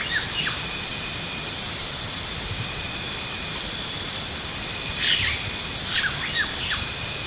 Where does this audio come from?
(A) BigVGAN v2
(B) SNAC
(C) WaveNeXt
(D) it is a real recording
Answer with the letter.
D